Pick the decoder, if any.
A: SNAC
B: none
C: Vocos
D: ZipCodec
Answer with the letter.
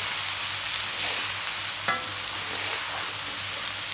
B